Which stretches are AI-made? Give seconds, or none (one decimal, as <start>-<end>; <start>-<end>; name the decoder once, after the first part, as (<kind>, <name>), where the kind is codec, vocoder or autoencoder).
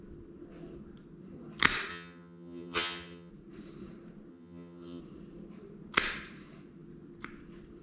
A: 1.9-3.3 (vocoder, HiFi-GAN); 4.3-5.0